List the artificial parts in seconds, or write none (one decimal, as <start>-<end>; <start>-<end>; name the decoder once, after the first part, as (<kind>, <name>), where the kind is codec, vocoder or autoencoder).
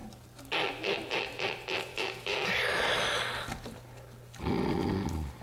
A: 1.9-2.5 (autoencoder, DAC-VAE)